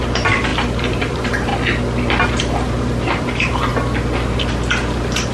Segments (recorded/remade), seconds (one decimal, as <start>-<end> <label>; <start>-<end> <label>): 0.0-1.5 remade; 1.5-2.4 recorded; 2.4-3.7 remade; 3.7-5.3 recorded